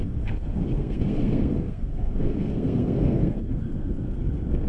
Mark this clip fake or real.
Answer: fake